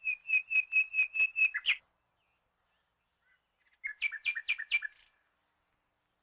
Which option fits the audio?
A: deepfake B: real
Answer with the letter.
B